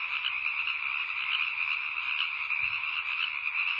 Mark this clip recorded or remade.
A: recorded